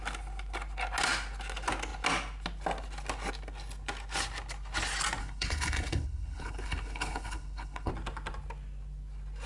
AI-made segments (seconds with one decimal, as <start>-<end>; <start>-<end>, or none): 5.2-7.9